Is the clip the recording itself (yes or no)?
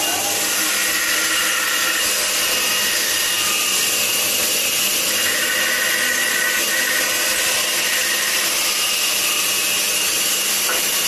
yes